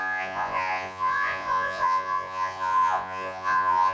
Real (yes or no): no